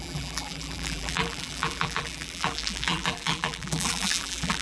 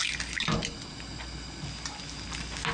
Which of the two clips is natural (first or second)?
second